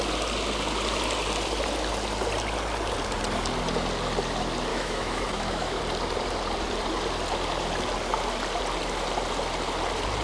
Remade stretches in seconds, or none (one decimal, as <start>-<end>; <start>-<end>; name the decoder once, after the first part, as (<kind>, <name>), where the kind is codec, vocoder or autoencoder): 4.7-5.8 (autoencoder, DAC-VAE)